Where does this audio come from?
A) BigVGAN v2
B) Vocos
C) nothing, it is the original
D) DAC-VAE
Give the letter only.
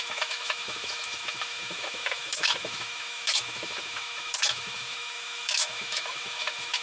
D